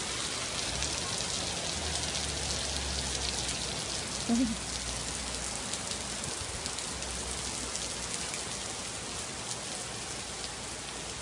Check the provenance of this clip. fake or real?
real